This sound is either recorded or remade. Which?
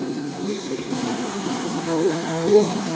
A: remade